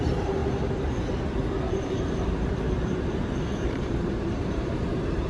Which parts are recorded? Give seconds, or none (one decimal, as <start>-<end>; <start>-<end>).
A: 0.4-1.7

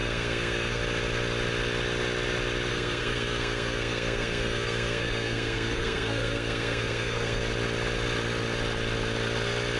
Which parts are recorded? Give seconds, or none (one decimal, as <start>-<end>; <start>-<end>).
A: 0.8-2.7; 7.4-9.8